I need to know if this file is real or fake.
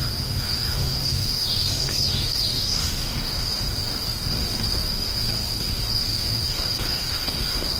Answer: fake